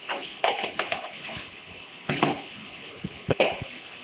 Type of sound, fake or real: fake